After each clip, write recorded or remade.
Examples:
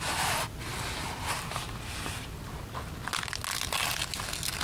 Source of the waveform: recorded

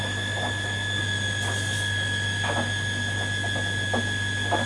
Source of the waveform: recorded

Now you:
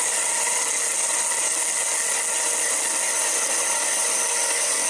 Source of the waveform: recorded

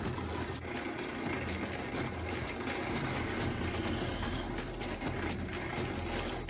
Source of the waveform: recorded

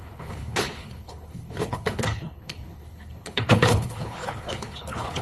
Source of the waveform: remade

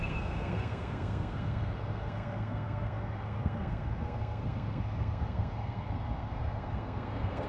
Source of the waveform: remade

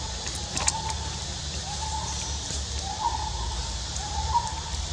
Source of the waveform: recorded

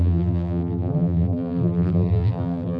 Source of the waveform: remade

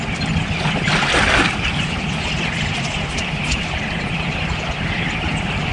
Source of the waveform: recorded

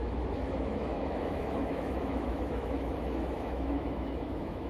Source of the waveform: remade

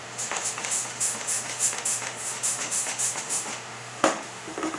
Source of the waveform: remade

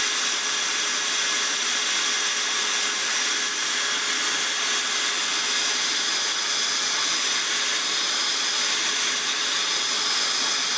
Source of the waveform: recorded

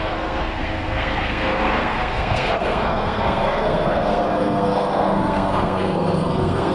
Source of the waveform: remade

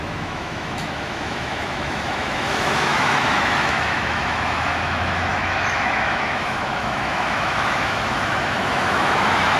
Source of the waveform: remade